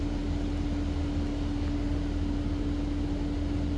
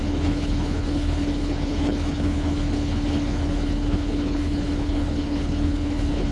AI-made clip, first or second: second